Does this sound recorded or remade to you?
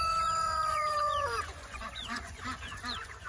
remade